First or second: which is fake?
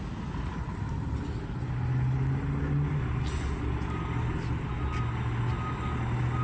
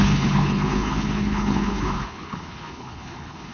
second